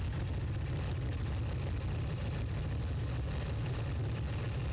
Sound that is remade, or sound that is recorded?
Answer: recorded